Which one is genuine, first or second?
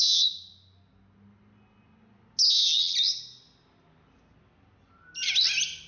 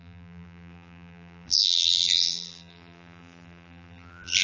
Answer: first